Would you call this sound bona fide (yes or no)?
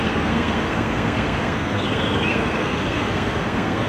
no